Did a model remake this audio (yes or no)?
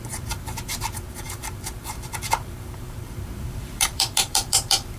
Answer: yes